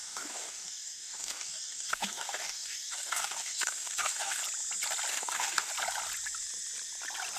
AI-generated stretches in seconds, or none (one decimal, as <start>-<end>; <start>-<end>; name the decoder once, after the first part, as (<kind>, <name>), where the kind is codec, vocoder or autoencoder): 0.0-4.4 (codec, DAC); 5.1-5.7